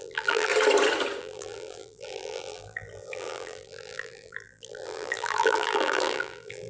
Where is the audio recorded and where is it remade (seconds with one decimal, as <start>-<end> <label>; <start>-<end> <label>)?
0.0-0.5 remade; 0.5-1.2 recorded; 1.2-6.7 remade